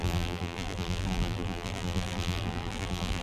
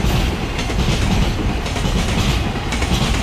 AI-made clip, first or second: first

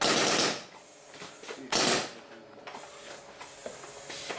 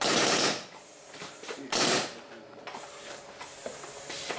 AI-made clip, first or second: second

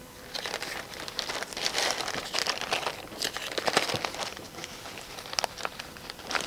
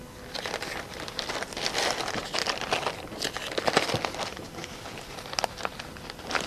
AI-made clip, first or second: first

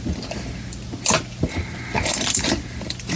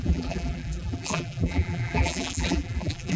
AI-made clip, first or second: second